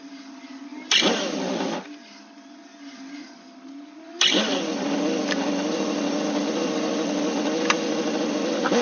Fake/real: real